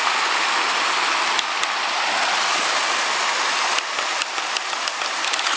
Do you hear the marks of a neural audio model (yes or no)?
no